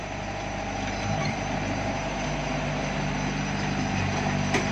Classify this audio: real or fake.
real